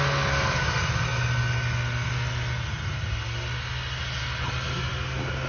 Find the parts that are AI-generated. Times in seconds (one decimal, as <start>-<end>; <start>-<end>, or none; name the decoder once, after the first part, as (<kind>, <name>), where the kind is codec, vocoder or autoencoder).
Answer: none